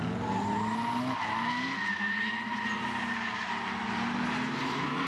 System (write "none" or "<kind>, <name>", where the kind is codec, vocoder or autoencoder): none